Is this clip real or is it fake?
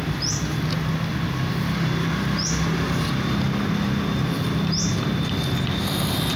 real